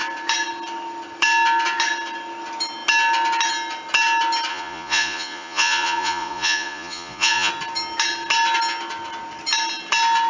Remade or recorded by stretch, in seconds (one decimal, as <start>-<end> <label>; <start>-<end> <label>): 0.0-4.5 recorded; 4.5-7.5 remade; 7.5-10.3 recorded

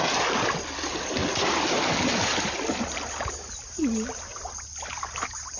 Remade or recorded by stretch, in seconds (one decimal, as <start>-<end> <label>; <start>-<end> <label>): 0.0-5.6 recorded

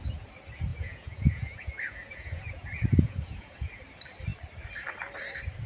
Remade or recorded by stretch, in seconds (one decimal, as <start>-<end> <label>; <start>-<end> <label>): 0.0-0.7 recorded; 0.7-3.8 remade; 3.8-5.7 recorded

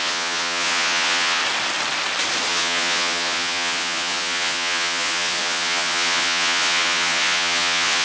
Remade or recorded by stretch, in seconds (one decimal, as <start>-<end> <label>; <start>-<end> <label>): 0.0-1.4 remade; 1.4-2.5 recorded; 2.5-8.0 remade

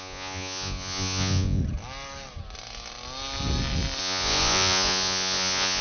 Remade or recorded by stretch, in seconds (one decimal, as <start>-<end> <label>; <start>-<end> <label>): 0.0-1.6 remade; 1.6-4.0 recorded; 4.0-5.8 remade

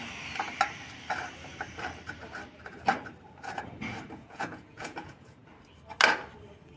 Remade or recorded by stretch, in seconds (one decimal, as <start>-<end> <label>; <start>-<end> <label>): 0.0-4.1 recorded; 4.1-5.4 remade; 5.4-6.8 recorded

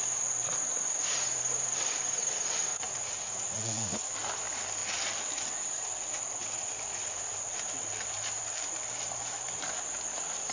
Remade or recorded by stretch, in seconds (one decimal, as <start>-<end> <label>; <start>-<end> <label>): 0.0-2.7 recorded; 2.7-4.1 remade; 4.1-10.5 recorded